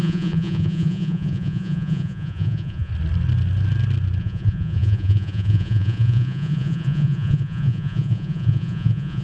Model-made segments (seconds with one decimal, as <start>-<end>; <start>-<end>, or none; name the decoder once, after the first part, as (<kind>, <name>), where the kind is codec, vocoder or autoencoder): 0.0-2.9 (vocoder, Vocos); 4.2-9.2